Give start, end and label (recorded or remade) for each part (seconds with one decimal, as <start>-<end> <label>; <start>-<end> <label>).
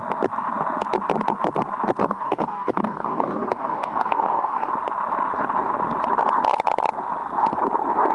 0.0-2.0 recorded; 2.0-4.7 remade; 4.7-8.1 recorded